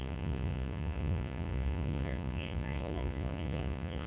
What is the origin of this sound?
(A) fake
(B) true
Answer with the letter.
A